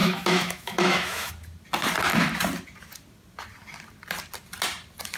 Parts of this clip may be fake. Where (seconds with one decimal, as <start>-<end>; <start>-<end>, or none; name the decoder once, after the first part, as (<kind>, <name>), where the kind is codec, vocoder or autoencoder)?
0.0-1.3 (autoencoder, DAC-VAE)